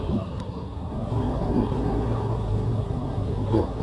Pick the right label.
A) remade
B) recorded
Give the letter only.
A